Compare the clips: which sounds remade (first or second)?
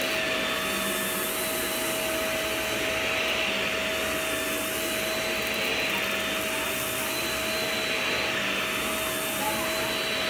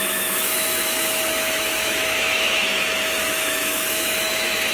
second